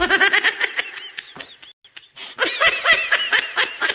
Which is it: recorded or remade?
recorded